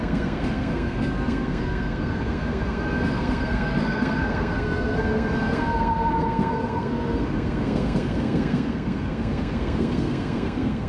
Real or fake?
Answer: fake